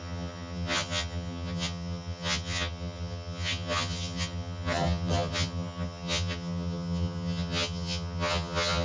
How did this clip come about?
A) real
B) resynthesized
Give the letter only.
B